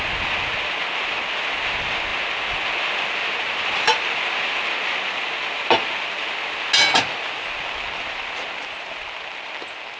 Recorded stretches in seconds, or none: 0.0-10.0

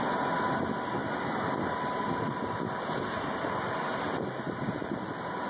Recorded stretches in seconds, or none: 0.0-5.5

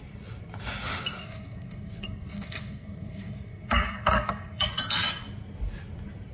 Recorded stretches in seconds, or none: 0.0-1.2; 4.7-6.3

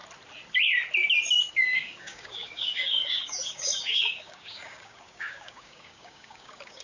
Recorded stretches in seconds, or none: 0.0-1.5

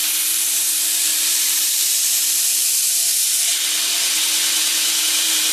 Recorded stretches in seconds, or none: 3.5-5.0

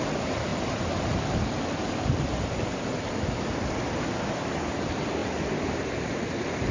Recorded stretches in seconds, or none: 0.0-6.7